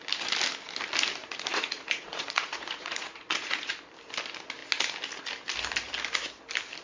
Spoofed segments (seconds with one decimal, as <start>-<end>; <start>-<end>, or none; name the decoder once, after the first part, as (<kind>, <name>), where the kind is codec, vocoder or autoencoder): 1.2-3.7 (vocoder, Vocos)